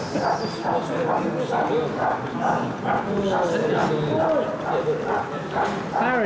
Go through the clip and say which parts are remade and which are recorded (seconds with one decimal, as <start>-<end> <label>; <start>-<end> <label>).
0.0-6.3 recorded